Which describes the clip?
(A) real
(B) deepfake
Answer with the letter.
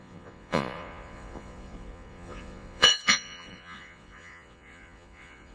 B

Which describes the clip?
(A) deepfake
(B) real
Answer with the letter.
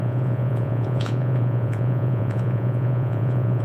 A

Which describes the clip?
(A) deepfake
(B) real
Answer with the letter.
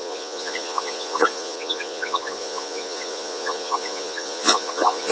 A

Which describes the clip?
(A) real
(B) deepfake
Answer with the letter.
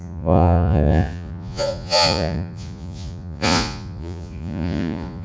B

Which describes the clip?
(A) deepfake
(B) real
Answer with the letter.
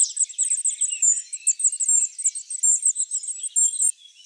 B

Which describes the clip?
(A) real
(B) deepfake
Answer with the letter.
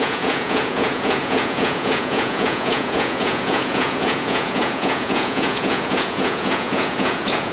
B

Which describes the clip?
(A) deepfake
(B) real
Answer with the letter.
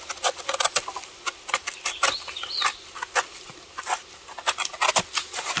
B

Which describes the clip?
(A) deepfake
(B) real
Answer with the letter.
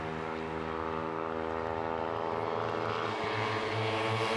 B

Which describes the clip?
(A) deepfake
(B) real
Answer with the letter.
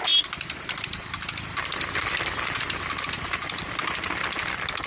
B